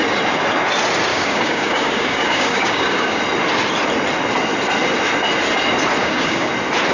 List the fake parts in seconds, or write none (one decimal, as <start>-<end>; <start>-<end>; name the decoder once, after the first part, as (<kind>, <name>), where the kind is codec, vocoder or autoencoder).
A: 1.1-3.2 (codec, DAC); 6.0-6.5